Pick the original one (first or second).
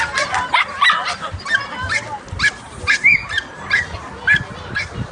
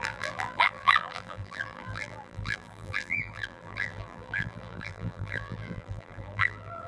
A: first